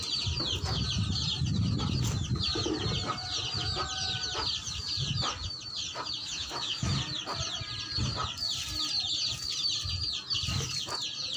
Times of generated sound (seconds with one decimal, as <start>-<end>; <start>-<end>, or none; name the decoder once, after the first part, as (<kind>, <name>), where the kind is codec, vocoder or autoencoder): 6.2-6.9 (autoencoder, DAC-VAE)